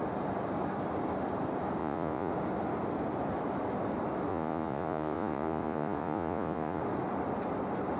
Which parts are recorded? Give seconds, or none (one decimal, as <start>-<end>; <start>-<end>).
0.0-1.8; 2.3-4.3; 6.8-8.0